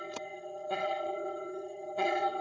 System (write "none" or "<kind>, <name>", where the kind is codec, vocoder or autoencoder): vocoder, HiFi-GAN